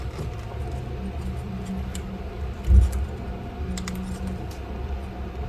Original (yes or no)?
yes